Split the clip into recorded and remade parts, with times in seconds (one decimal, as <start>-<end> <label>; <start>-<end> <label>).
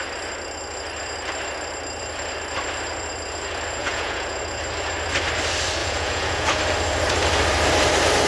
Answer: 0.0-3.8 recorded; 3.8-4.4 remade; 4.4-5.8 recorded; 5.8-6.6 remade; 6.6-8.3 recorded